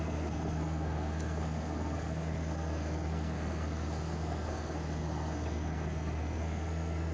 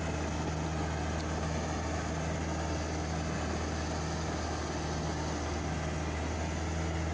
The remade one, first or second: first